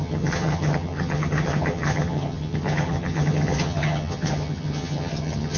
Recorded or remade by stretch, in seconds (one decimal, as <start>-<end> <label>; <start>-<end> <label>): 0.0-5.6 remade